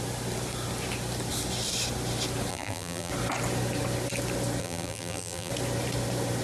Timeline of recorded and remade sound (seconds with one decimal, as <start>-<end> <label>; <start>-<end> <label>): 0.0-2.5 recorded; 2.5-3.1 remade; 3.1-4.6 recorded; 4.6-5.5 remade; 5.5-6.4 recorded